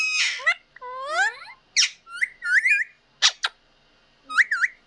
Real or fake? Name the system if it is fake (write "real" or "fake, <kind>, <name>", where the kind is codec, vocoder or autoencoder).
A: real